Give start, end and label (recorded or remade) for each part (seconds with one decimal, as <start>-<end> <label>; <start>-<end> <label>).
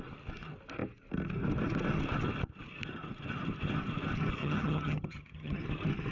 0.0-4.4 recorded; 4.4-5.6 remade; 5.6-6.1 recorded